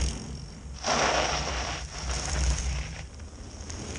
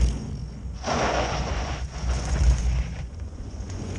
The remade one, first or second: second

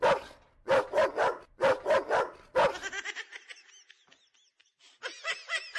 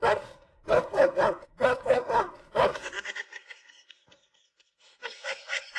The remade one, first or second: second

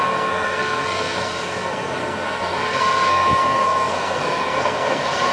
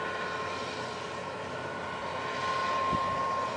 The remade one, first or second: first